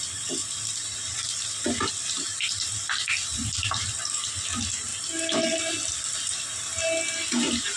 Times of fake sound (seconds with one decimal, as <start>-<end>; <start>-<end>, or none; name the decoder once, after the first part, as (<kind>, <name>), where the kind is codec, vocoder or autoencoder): 0.4-1.9 (vocoder, BigVGAN v2)